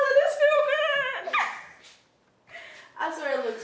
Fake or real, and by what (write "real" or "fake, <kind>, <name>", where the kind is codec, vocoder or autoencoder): real